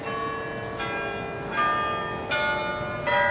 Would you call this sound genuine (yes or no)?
yes